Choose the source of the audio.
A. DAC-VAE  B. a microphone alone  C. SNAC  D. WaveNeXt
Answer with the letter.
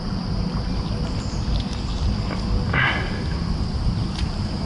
B